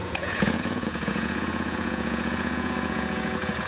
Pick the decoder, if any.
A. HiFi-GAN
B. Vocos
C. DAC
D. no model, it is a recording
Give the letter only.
B